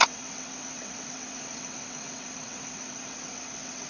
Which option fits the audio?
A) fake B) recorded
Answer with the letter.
A